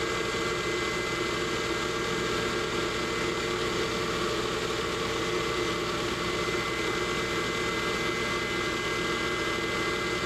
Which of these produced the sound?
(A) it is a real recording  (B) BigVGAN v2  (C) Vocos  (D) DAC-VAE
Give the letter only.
A